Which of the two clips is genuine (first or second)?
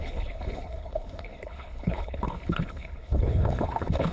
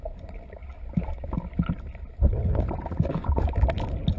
second